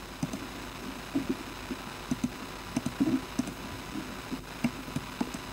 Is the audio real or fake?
real